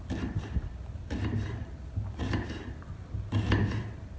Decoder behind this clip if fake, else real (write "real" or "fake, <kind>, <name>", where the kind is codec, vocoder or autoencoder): real